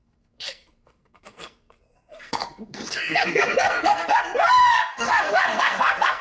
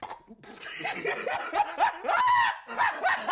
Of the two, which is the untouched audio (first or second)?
second